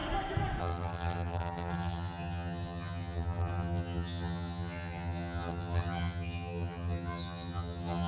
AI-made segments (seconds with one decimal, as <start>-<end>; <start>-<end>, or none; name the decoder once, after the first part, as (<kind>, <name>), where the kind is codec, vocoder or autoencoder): 0.6-8.1 (vocoder, HiFi-GAN)